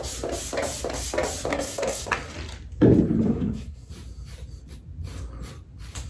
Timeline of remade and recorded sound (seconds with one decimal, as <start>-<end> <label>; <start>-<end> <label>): 0.0-1.5 recorded; 1.5-2.1 remade; 2.1-3.3 recorded; 3.3-3.9 remade; 3.9-6.1 recorded